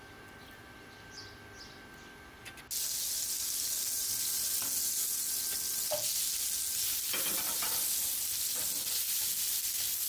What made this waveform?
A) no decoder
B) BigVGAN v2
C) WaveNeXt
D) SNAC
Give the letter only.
A